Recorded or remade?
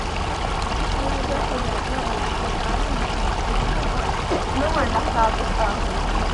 recorded